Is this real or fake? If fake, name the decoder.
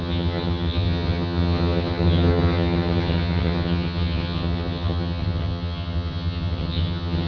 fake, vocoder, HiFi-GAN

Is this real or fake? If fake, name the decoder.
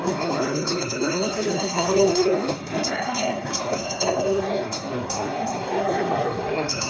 fake, codec, SNAC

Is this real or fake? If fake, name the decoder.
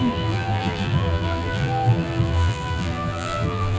fake, vocoder, BigVGAN v2